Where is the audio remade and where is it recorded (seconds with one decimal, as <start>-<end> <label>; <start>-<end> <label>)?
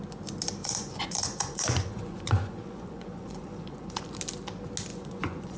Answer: 0.0-0.6 recorded; 0.6-4.0 remade; 4.0-4.9 recorded; 4.9-5.6 remade